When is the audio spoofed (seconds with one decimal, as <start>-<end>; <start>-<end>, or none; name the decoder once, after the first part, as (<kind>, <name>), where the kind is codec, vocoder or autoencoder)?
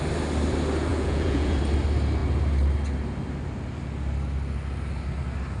0.9-1.6 (vocoder, Vocos)